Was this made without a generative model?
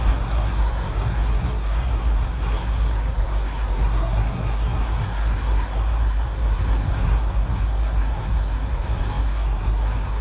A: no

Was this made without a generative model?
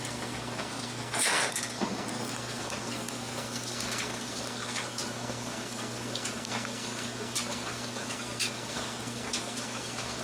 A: no